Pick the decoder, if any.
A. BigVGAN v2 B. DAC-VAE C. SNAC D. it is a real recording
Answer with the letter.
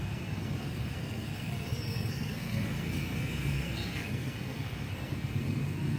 C